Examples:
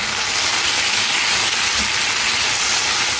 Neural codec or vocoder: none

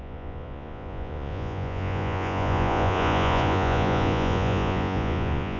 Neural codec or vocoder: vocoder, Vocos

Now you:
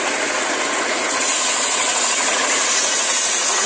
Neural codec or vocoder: vocoder, Vocos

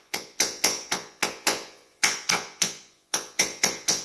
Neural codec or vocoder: vocoder, Vocos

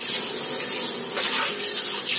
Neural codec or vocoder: none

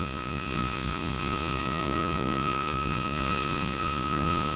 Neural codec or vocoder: vocoder, Vocos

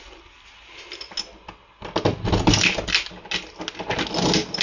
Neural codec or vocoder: none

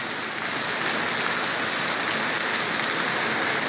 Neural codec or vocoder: none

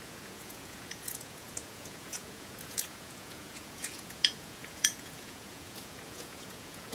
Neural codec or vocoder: vocoder, Vocos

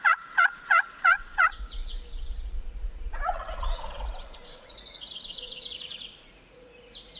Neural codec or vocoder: vocoder, Vocos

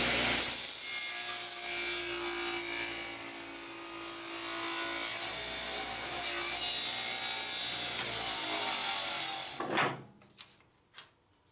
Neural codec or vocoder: none